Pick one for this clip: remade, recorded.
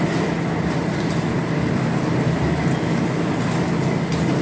recorded